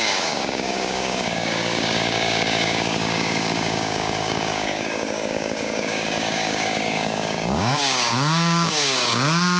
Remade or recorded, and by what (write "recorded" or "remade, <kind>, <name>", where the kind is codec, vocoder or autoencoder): remade, codec, DAC